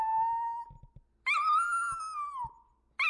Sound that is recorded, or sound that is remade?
recorded